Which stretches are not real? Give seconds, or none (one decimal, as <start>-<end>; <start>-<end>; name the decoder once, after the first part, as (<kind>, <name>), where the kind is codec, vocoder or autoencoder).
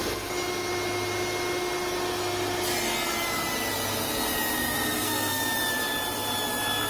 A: 4.6-5.4 (codec, SNAC)